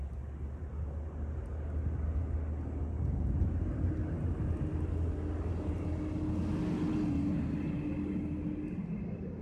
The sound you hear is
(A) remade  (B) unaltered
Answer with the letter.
B